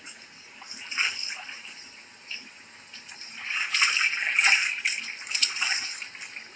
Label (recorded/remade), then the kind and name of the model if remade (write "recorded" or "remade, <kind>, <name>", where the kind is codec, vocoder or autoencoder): recorded